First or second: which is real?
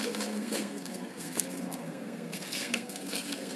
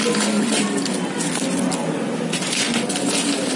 second